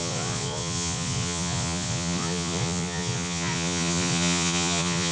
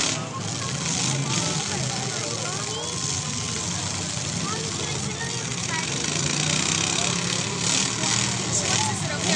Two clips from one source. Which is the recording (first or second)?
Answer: second